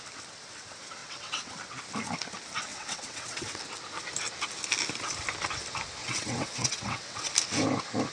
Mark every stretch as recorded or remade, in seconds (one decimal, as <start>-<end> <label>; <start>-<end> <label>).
0.0-1.0 recorded; 1.0-1.5 remade; 1.5-2.7 recorded; 2.7-3.6 remade; 3.6-6.0 recorded; 6.0-7.3 remade; 7.3-8.1 recorded